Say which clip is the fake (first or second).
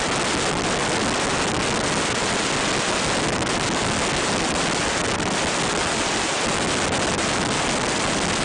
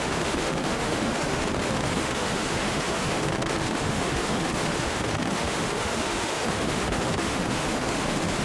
second